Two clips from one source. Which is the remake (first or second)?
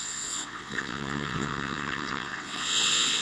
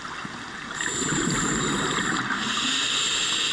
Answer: first